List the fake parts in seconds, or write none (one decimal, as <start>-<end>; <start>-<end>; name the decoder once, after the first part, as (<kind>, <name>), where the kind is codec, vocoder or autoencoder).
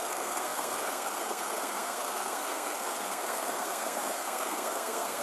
0.0-5.2 (codec, SNAC)